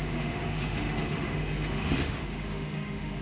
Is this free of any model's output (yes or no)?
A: no